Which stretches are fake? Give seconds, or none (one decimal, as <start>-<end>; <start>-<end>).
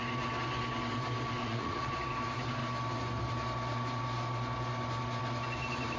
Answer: 1.4-1.9